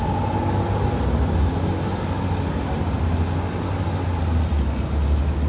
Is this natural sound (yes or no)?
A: yes